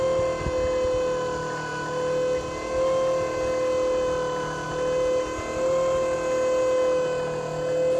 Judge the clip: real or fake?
real